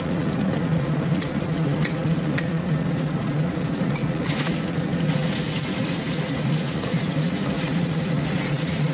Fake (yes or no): yes